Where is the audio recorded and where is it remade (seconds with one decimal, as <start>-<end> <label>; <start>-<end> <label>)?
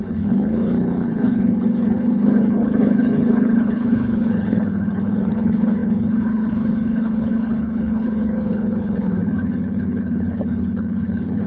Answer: 0.0-11.5 remade